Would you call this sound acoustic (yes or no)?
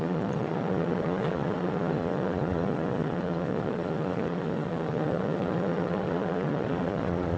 no